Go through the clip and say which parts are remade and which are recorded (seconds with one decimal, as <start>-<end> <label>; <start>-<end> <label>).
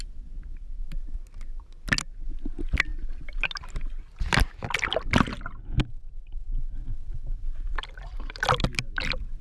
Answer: 0.0-0.8 recorded; 0.8-1.6 remade; 1.6-9.4 recorded